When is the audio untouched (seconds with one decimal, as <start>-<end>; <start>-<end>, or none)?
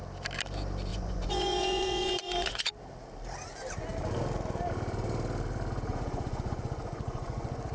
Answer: 0.0-0.9; 2.7-5.9